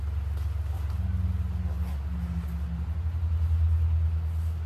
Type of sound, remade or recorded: recorded